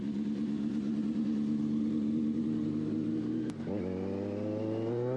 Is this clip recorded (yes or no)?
yes